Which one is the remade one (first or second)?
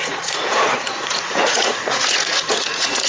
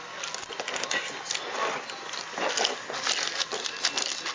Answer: first